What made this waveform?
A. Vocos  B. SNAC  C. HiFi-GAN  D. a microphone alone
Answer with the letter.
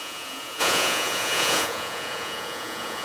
A